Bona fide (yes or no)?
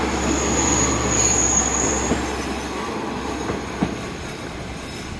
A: yes